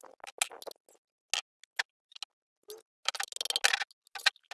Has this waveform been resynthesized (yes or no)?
no